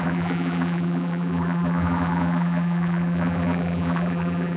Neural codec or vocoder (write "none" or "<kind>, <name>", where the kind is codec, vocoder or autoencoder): vocoder, BigVGAN v2